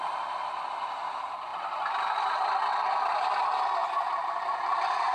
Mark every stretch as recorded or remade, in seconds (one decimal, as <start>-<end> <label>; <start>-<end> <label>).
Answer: 0.0-3.8 recorded; 3.8-5.1 remade